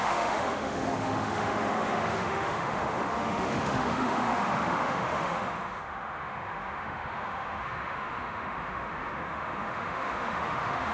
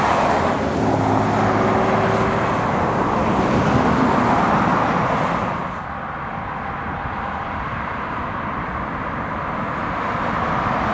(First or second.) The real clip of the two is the second